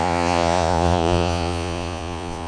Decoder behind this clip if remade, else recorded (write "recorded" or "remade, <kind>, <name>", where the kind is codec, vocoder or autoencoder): remade, vocoder, Vocos